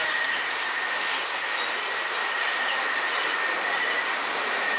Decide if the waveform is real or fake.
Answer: real